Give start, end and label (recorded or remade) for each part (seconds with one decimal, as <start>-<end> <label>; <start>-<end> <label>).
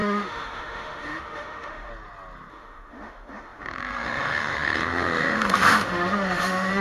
0.0-1.9 remade; 1.9-2.5 recorded; 2.5-6.8 remade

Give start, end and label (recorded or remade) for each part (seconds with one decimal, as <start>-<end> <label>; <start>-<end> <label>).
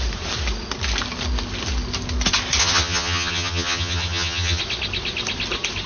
0.0-2.6 recorded; 2.6-4.6 remade; 4.6-5.9 recorded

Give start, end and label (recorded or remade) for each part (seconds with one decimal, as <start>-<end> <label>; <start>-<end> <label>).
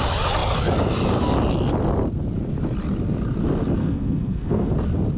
0.0-3.8 recorded; 3.8-4.7 remade; 4.7-5.2 recorded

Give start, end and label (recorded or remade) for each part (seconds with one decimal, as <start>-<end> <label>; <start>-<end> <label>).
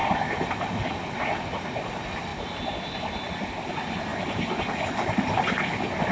0.0-2.3 recorded; 2.3-2.9 remade; 2.9-6.1 recorded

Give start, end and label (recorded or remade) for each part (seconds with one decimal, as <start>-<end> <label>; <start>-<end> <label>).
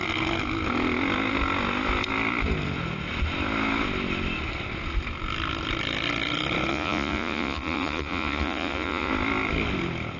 0.0-6.7 recorded; 6.7-9.1 remade; 9.1-10.2 recorded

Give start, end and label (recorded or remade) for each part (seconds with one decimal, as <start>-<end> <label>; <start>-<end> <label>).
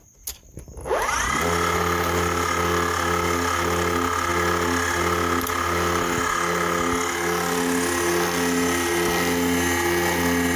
0.0-10.6 recorded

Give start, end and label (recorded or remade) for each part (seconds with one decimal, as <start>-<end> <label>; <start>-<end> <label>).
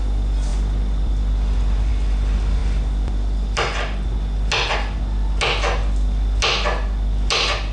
0.0-7.7 recorded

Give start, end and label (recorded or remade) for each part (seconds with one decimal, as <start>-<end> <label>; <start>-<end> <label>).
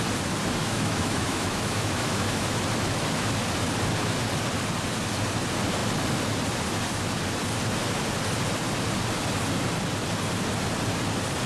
0.0-0.6 recorded; 0.6-2.6 remade; 2.6-11.5 recorded